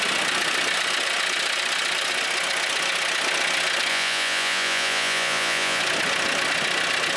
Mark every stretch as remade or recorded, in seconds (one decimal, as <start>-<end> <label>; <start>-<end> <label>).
0.0-3.9 recorded; 3.9-5.8 remade; 5.8-7.2 recorded